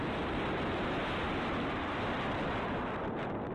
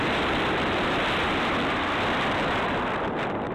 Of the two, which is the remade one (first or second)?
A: second